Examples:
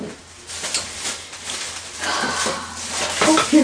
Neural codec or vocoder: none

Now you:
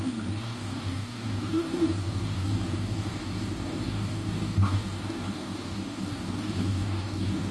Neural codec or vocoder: codec, DAC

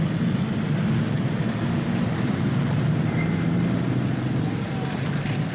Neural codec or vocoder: none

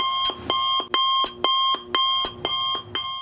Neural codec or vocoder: none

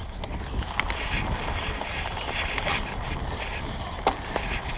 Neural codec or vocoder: none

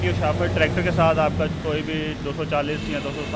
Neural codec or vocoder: none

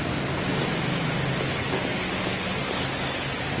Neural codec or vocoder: none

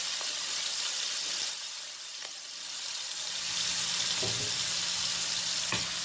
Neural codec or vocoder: none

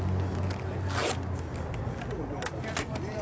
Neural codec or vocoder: none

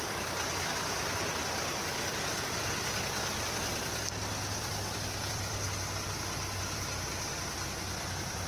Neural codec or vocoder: vocoder, BigVGAN v2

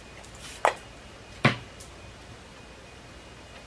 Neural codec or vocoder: none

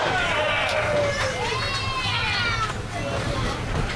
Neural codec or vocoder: none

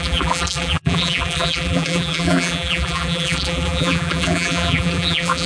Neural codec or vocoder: vocoder, BigVGAN v2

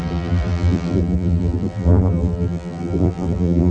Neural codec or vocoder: vocoder, BigVGAN v2